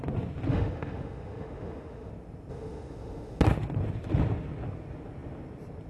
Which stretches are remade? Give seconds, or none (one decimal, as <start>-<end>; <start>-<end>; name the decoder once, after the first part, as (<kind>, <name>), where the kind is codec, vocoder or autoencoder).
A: 0.5-2.1 (autoencoder, DAC-VAE); 2.5-3.4